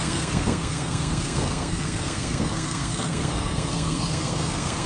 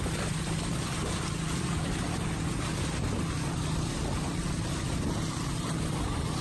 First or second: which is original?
second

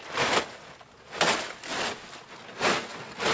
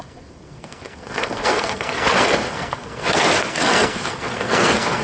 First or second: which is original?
first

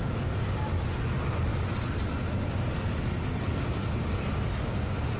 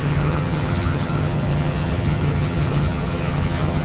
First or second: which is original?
first